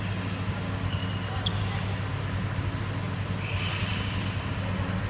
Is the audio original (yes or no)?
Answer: yes